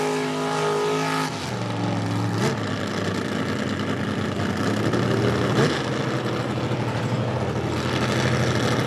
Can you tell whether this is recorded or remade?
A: recorded